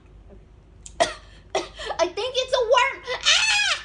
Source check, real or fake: fake